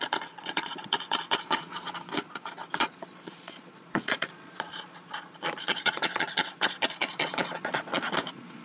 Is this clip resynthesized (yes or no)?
yes